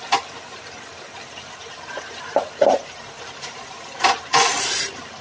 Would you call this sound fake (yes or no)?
no